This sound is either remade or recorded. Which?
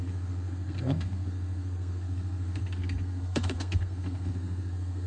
remade